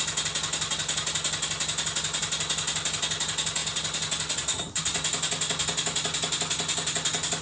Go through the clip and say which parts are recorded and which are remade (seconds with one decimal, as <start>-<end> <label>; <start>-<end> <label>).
0.0-7.4 recorded

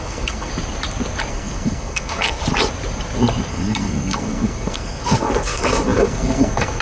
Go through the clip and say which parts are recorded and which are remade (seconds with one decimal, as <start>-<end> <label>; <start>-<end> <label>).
0.0-0.5 remade; 0.5-1.3 recorded; 1.3-2.4 remade; 2.4-3.5 recorded; 3.5-6.8 remade

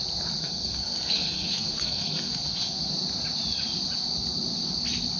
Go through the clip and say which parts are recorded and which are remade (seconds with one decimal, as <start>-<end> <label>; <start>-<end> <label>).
0.0-0.4 recorded; 0.4-2.9 remade; 2.9-5.2 recorded

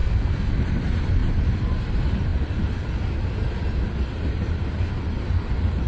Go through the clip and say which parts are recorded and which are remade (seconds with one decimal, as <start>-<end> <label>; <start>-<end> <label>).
0.0-0.5 remade; 0.5-5.9 recorded

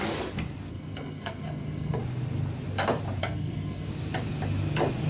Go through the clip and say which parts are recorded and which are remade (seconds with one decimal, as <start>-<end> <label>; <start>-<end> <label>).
0.0-0.7 recorded; 0.7-2.0 remade; 2.0-3.2 recorded; 3.2-3.9 remade; 3.9-5.1 recorded

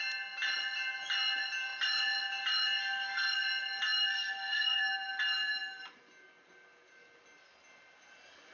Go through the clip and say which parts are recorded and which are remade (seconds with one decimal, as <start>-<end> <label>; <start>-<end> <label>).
0.0-2.8 recorded; 2.8-3.3 remade; 3.3-4.1 recorded; 4.1-4.8 remade; 4.8-8.5 recorded